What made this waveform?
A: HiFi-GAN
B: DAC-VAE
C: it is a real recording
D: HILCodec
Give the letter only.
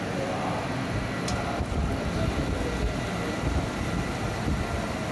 C